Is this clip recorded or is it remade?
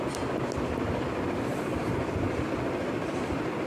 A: recorded